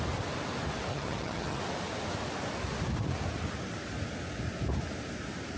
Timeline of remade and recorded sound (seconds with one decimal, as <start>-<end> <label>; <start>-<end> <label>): 0.0-0.9 recorded; 0.9-1.6 remade; 1.6-5.6 recorded